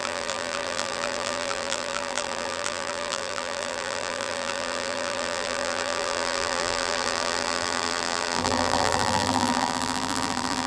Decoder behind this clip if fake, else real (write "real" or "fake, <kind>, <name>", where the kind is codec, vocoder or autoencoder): fake, vocoder, BigVGAN v2